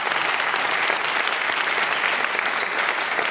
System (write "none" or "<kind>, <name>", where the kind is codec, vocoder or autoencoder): none